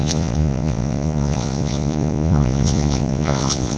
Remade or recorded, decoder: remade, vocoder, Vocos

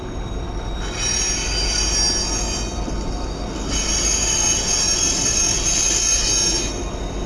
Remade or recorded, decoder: recorded